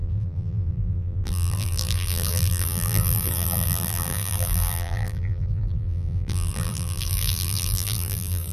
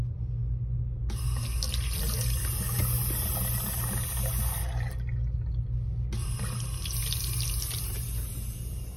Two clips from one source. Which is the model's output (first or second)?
first